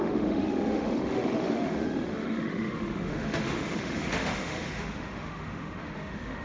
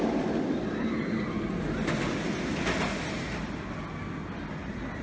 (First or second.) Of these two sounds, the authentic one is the second